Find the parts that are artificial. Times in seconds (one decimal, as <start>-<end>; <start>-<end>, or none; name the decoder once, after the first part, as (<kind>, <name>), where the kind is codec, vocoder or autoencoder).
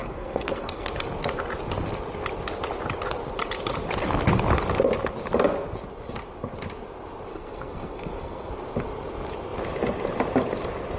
0.0-0.9 (codec, SNAC); 7.3-8.5